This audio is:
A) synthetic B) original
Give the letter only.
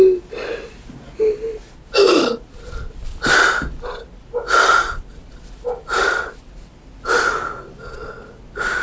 B